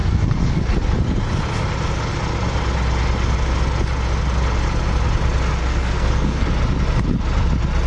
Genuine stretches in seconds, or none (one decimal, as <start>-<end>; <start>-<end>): 0.6-5.6; 6.5-7.9